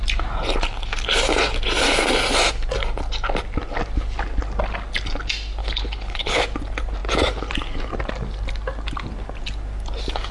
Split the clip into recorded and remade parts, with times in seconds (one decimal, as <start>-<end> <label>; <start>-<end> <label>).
0.0-5.6 recorded; 5.6-6.4 remade; 6.4-10.3 recorded